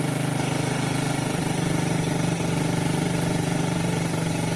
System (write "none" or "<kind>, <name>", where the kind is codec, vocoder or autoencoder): vocoder, BigVGAN v2